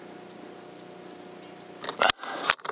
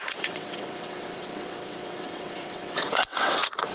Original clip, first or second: first